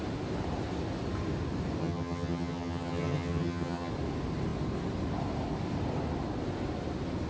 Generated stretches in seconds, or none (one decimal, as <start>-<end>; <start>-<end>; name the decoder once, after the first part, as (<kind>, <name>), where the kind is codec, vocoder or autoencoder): 1.8-3.9 (vocoder, HiFi-GAN)